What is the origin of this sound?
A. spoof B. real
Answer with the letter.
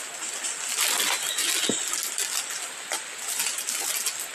B